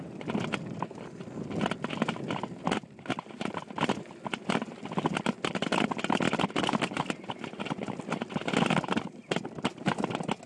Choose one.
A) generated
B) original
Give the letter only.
B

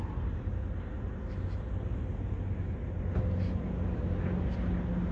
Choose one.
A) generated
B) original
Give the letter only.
B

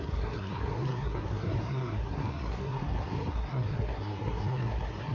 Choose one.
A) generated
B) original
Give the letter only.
A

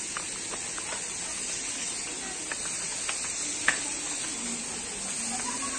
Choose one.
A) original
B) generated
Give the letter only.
A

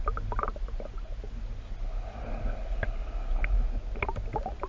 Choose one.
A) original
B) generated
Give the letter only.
A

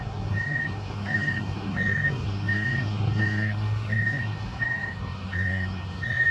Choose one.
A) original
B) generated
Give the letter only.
B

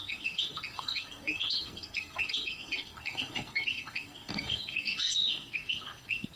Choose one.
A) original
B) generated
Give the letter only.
B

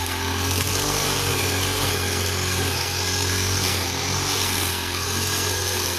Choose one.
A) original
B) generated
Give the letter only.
B